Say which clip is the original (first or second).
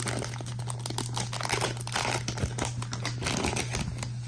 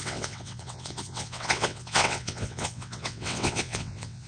first